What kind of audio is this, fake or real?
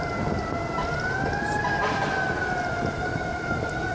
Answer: real